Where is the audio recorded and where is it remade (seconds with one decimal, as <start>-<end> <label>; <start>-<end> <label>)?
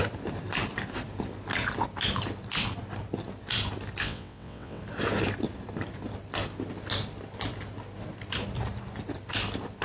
0.0-4.0 recorded; 4.0-4.8 remade; 4.8-9.8 recorded